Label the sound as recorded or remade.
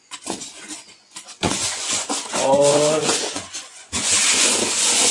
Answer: remade